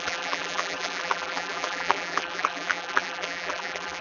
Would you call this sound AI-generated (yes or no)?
yes